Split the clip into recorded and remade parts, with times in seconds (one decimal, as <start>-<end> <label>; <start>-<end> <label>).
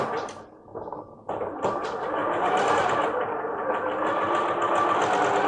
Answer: 0.0-2.2 recorded; 2.2-3.7 remade; 3.7-5.5 recorded